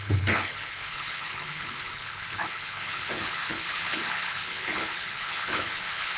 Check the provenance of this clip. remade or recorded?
remade